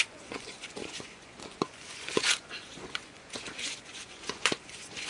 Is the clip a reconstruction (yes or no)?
yes